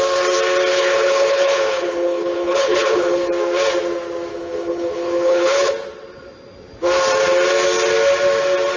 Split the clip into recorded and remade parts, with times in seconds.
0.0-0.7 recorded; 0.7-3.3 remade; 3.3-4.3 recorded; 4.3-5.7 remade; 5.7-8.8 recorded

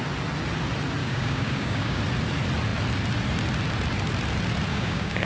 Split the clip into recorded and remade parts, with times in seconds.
0.0-1.0 recorded; 1.0-2.0 remade; 2.0-4.7 recorded; 4.7-5.3 remade

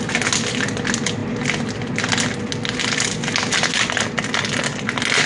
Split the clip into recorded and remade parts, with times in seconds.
0.0-5.3 recorded

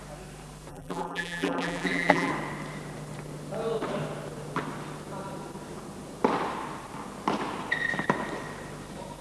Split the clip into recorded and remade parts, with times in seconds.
0.0-0.7 recorded; 0.7-2.3 remade; 2.3-9.2 recorded